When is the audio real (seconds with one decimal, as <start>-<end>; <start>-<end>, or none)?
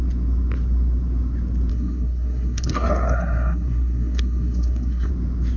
0.0-1.7; 5.1-5.6